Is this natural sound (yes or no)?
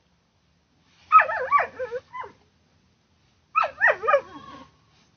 yes